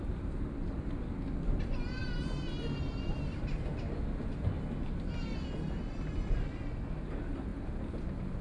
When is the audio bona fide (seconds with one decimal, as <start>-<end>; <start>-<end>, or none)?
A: 0.0-8.4